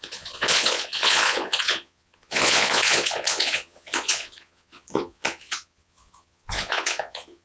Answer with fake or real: fake